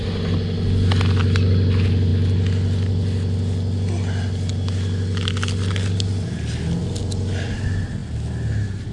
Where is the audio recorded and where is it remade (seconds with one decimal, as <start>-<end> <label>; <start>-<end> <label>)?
0.0-8.9 recorded